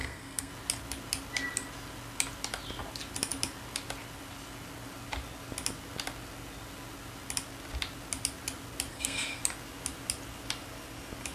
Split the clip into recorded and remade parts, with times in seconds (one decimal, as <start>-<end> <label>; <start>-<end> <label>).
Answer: 0.0-0.5 remade; 0.5-8.9 recorded; 8.9-9.4 remade; 9.4-11.3 recorded